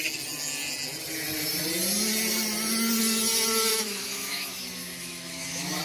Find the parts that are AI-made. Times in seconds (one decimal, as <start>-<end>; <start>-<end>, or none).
3.7-5.8